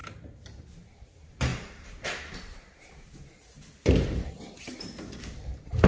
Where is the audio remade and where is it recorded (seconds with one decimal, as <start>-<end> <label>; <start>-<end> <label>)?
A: 0.0-1.0 recorded; 1.0-5.9 remade